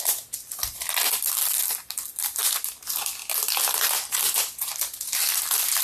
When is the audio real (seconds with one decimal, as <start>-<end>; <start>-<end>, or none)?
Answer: 0.0-5.8